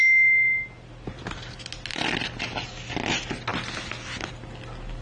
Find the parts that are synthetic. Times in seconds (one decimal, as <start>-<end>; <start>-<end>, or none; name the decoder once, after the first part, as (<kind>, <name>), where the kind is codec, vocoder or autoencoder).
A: none